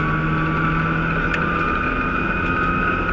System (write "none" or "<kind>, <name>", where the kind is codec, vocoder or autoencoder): none